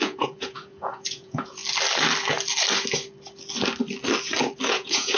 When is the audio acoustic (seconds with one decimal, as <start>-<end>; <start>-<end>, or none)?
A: 1.6-4.7